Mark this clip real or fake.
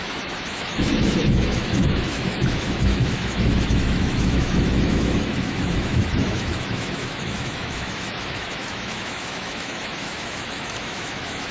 fake